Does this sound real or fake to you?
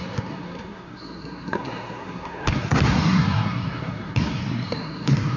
fake